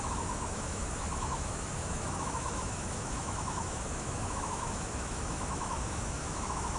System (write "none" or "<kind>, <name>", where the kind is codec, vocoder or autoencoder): autoencoder, DAC-VAE